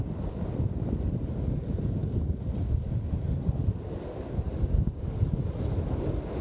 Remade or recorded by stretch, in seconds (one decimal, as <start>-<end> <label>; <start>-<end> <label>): 0.0-6.4 recorded